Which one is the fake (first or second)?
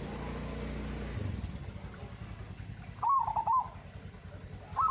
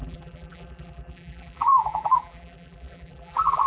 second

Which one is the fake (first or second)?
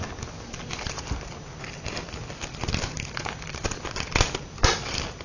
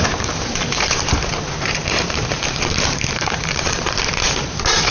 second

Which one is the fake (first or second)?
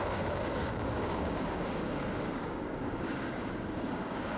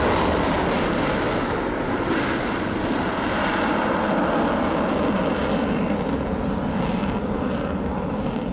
first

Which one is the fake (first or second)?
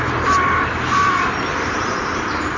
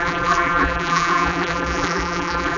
second